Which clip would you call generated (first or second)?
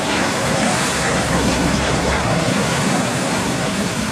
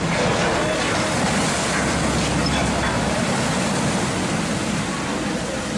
first